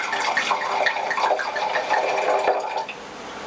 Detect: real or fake real